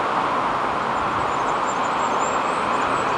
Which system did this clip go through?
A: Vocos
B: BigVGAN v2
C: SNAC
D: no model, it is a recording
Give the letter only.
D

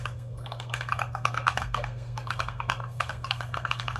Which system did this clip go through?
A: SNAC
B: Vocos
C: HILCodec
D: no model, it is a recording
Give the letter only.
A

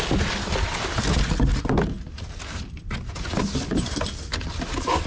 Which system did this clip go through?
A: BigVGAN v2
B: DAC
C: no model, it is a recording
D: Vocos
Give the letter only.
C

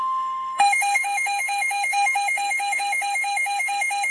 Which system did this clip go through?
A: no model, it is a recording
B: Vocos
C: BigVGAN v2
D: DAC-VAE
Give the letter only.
D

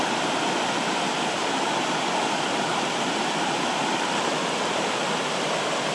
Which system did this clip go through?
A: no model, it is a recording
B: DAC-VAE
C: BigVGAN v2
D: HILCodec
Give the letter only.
A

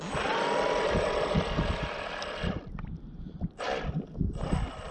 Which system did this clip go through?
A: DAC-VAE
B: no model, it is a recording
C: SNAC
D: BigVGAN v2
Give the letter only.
D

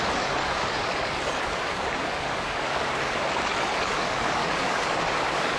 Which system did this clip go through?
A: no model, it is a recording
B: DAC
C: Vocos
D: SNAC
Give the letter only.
B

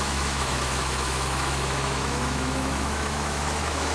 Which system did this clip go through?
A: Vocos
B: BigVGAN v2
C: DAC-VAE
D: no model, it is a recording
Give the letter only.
C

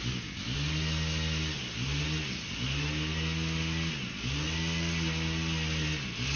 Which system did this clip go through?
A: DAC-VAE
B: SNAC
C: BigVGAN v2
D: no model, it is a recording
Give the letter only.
D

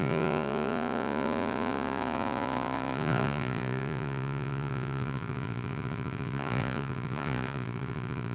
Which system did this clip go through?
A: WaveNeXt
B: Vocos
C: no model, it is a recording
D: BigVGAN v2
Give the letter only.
B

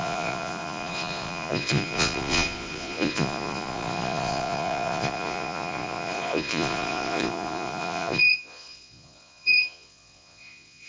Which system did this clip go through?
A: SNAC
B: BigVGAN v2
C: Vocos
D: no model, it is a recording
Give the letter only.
C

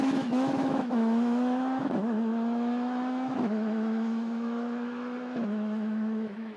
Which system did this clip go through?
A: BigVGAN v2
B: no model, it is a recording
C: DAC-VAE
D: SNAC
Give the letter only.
C